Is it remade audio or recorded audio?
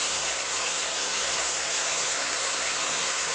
remade